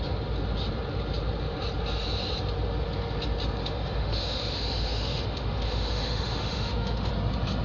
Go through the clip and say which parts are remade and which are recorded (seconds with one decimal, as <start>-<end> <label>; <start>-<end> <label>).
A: 0.0-3.6 recorded; 3.6-7.1 remade; 7.1-7.6 recorded